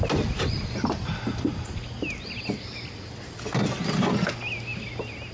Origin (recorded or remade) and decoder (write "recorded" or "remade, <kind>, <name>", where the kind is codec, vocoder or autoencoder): recorded